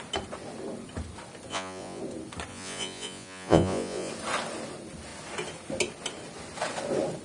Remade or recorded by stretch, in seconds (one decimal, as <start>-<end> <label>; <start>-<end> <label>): 0.0-1.5 recorded; 1.5-2.0 remade; 2.0-2.5 recorded; 2.5-4.1 remade; 4.1-7.2 recorded